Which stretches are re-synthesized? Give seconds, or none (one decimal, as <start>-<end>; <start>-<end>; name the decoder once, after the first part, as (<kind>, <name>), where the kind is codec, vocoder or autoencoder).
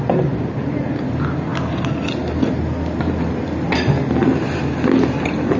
none